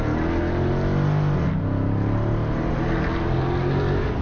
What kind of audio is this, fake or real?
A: real